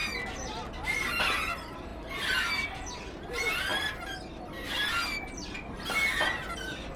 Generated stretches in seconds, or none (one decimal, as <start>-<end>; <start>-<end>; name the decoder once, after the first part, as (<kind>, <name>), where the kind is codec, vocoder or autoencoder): none